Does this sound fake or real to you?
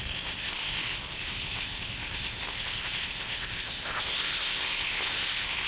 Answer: fake